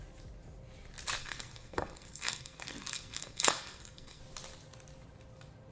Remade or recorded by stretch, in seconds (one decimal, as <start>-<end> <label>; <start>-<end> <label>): 0.0-1.2 recorded; 1.2-4.2 remade; 4.2-5.7 recorded